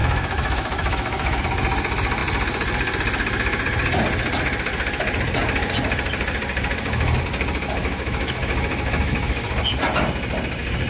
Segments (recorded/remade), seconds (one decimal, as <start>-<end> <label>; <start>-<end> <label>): 0.0-1.4 remade; 1.4-7.8 recorded; 7.8-9.5 remade; 9.5-10.9 recorded

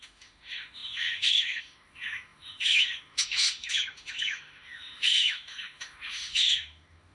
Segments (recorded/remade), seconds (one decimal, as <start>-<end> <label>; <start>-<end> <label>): 0.0-7.1 remade